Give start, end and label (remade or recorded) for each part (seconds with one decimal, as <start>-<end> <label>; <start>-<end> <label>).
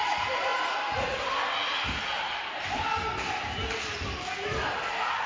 0.0-5.3 recorded